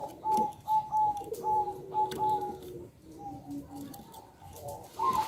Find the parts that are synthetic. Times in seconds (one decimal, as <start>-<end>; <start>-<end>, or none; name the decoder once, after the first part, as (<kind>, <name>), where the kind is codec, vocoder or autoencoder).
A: 0.0-3.2 (vocoder, BigVGAN v2)